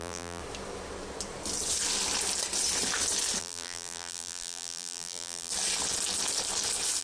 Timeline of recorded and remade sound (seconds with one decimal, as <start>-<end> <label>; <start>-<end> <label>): 0.0-0.4 remade; 0.4-3.4 recorded; 3.4-5.5 remade; 5.5-7.0 recorded